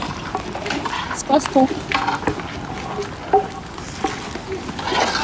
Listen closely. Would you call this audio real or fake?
real